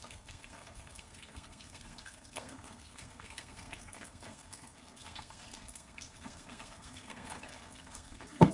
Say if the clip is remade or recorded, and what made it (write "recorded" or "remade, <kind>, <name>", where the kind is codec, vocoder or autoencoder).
remade, codec, SNAC